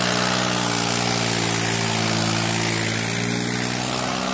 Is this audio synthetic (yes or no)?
no